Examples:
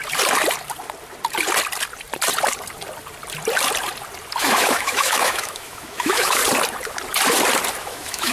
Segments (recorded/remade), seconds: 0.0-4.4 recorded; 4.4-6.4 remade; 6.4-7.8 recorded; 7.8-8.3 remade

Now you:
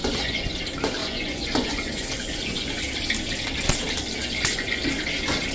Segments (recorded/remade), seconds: 0.0-0.5 remade; 0.5-1.0 recorded; 1.0-2.8 remade; 2.8-4.2 recorded; 4.2-4.8 remade; 4.8-5.5 recorded

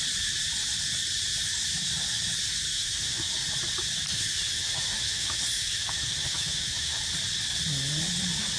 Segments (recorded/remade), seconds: 0.0-2.7 recorded; 2.7-3.3 remade; 3.3-4.1 recorded; 4.1-7.0 remade; 7.0-8.6 recorded

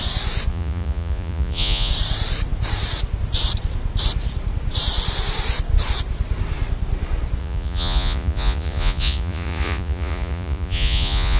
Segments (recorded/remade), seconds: 0.0-0.5 recorded; 0.5-1.9 remade; 1.9-7.4 recorded; 7.4-11.4 remade